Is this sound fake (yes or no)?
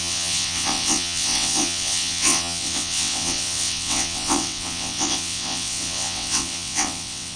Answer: yes